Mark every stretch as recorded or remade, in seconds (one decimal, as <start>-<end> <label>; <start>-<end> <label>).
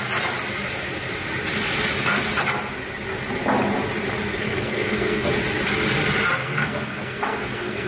0.0-4.3 recorded; 4.3-5.3 remade; 5.3-6.4 recorded; 6.4-7.9 remade